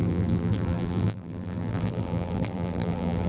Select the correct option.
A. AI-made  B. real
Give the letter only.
A